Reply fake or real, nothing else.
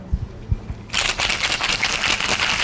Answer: real